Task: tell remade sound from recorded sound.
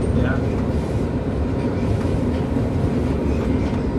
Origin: recorded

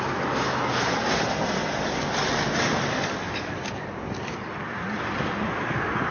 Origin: recorded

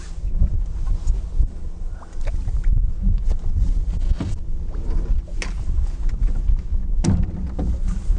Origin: recorded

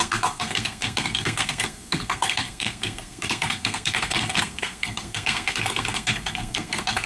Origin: remade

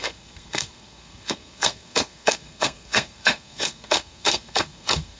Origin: remade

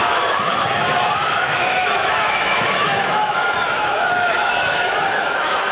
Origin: remade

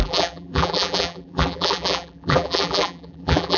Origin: remade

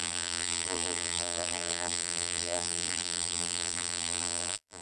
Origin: remade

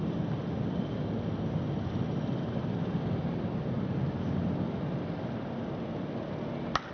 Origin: recorded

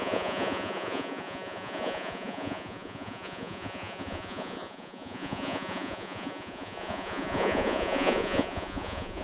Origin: remade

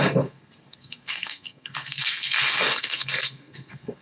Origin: remade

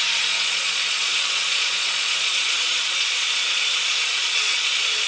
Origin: remade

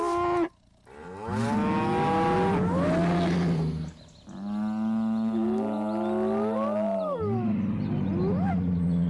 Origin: recorded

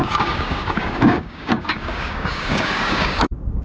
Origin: remade